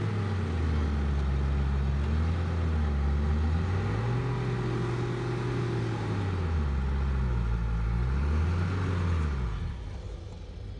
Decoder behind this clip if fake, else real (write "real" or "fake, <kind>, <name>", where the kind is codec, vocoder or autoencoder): real